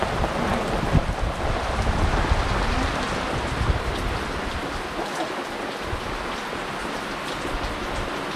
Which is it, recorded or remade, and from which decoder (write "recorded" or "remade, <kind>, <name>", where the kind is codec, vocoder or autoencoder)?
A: recorded